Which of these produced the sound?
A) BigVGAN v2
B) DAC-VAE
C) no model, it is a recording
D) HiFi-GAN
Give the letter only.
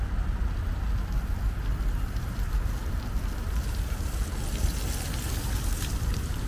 C